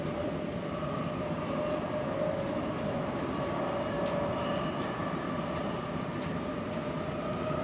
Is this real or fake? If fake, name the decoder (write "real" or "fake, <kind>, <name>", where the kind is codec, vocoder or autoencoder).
real